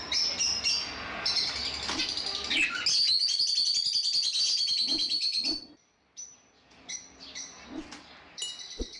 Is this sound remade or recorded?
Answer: recorded